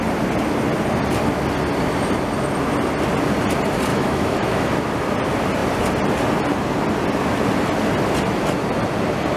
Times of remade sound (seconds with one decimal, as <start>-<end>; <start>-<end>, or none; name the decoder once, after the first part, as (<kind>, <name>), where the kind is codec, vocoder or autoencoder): 3.9-4.7 (autoencoder, DAC-VAE)